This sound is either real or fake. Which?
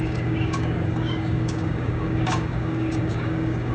fake